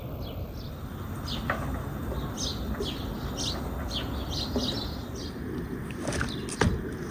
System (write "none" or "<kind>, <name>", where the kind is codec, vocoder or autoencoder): none